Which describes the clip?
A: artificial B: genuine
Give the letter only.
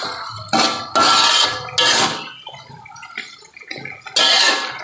B